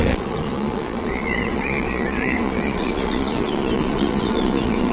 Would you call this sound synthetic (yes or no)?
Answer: yes